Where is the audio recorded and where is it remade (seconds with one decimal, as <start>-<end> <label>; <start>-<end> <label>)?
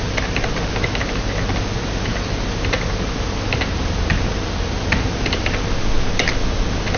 0.0-7.0 recorded